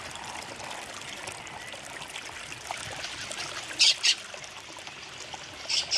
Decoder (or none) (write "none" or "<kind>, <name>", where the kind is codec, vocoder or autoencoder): none